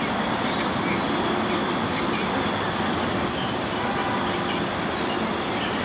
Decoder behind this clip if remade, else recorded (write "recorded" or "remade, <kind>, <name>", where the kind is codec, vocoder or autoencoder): recorded